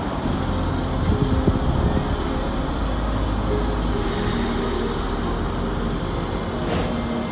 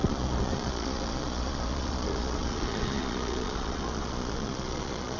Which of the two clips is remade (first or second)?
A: second